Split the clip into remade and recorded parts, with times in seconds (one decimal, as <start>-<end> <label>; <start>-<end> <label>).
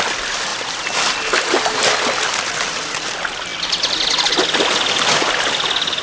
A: 0.0-6.0 recorded